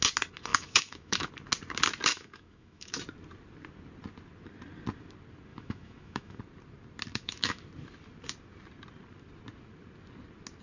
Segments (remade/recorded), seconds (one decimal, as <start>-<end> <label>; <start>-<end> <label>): 0.0-0.5 recorded; 0.5-1.3 remade; 1.3-2.1 recorded; 2.1-3.0 remade; 3.0-5.5 recorded; 5.5-6.4 remade; 6.4-7.1 recorded; 7.1-7.6 remade; 7.6-10.6 recorded